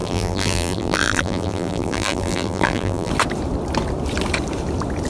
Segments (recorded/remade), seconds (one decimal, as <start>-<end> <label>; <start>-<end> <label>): 0.0-3.1 remade; 3.1-5.1 recorded